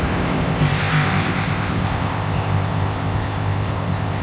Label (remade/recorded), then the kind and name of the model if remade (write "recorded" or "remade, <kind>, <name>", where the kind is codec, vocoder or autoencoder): remade, codec, ZipCodec